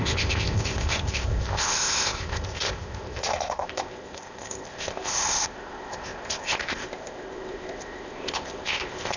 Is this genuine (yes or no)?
no